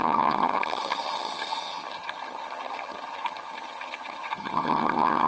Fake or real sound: fake